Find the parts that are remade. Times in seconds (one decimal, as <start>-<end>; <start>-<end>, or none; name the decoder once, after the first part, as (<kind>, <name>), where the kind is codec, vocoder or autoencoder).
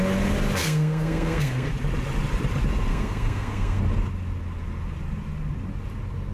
0.6-1.7 (codec, SNAC); 2.9-3.8